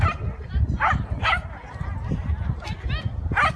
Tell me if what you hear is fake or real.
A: real